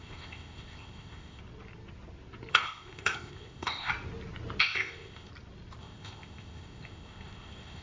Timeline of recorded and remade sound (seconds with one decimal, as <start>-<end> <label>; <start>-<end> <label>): 0.0-1.4 remade; 1.4-2.5 recorded; 2.5-3.9 remade; 3.9-4.6 recorded; 4.6-5.3 remade; 5.3-5.8 recorded; 5.8-7.8 remade